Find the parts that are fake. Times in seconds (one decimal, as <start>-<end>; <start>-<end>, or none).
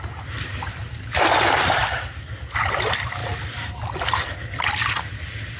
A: 3.2-4.5